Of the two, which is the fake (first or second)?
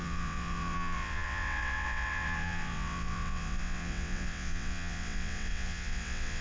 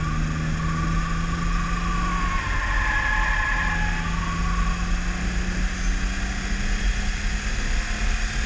first